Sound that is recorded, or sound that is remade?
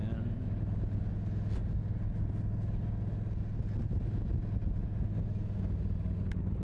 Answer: recorded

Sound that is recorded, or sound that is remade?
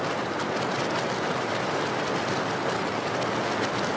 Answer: recorded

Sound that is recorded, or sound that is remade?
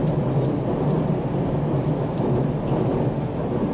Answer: recorded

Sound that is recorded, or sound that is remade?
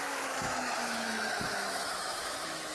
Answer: remade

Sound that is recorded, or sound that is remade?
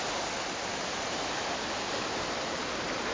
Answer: recorded